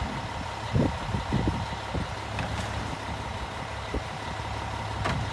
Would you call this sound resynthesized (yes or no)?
no